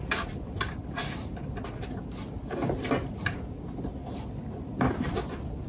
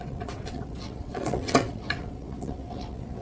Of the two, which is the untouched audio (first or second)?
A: first